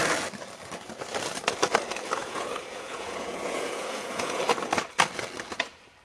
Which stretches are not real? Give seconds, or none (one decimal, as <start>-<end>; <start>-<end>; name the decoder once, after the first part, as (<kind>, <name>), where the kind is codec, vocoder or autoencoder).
2.2-4.4 (vocoder, Vocos)